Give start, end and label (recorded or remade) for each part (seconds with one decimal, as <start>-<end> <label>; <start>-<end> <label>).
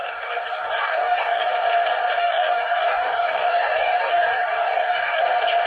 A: 0.0-1.5 remade; 1.5-2.2 recorded; 2.2-5.2 remade; 5.2-5.7 recorded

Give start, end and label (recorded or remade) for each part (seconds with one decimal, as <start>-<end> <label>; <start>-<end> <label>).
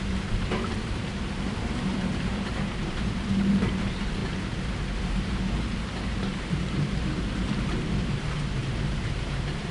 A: 0.0-4.2 remade; 4.2-5.0 recorded; 5.0-9.7 remade